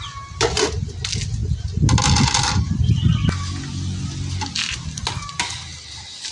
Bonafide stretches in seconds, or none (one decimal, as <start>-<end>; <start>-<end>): 0.0-6.3